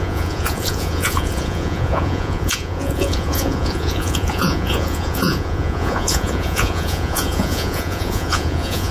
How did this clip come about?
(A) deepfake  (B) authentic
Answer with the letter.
A